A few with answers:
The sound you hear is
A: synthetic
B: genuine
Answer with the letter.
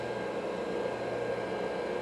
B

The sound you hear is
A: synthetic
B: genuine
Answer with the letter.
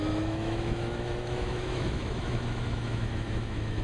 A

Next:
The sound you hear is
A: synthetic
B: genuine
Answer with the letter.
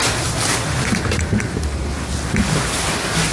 B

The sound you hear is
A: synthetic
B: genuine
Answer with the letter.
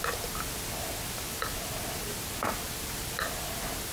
B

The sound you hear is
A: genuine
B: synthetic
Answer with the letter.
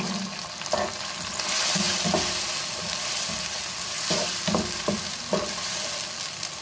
A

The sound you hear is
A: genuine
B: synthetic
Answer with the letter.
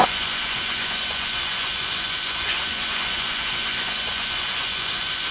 B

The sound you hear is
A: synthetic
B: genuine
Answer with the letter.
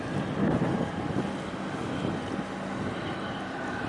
B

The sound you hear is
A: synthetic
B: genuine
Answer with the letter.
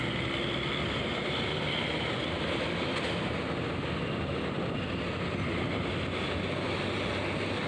B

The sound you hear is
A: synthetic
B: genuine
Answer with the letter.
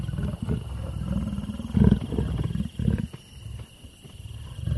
B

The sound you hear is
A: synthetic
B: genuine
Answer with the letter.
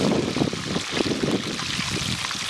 B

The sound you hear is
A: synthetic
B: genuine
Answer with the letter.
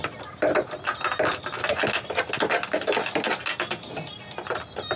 B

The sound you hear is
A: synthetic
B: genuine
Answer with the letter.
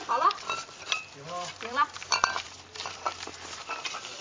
A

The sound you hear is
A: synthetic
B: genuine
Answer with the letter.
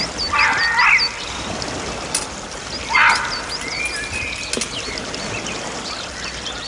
B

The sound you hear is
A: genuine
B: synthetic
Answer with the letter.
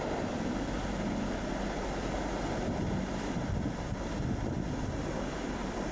A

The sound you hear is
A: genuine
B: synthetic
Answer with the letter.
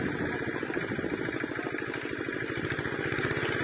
A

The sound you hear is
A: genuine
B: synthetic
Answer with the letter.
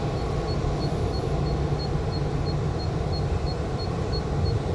A